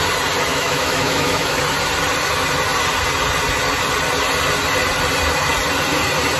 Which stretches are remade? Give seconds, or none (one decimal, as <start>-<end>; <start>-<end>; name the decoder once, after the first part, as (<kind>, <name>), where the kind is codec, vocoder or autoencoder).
0.5-1.6 (autoencoder, DAC-VAE)